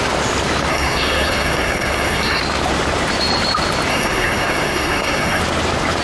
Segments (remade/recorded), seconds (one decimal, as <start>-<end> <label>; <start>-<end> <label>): 0.0-0.7 recorded; 0.7-2.4 remade; 2.4-3.9 recorded; 3.9-5.4 remade; 5.4-6.0 recorded